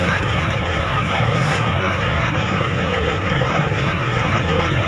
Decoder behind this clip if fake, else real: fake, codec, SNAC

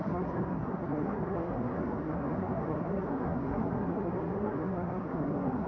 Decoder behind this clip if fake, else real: fake, codec, SNAC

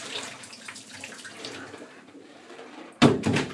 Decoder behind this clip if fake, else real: fake, vocoder, BigVGAN v2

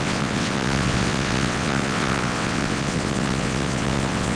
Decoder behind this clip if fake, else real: fake, vocoder, WaveNeXt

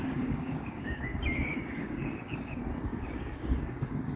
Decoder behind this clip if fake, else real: fake, codec, DAC